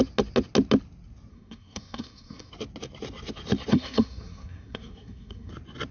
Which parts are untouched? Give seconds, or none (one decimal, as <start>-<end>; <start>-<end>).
0.0-1.3; 2.5-3.7; 5.5-5.9